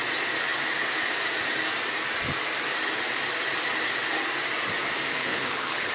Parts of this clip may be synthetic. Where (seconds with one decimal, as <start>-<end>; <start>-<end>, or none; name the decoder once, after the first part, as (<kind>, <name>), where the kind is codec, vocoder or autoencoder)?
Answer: 5.1-5.9 (codec, HILCodec)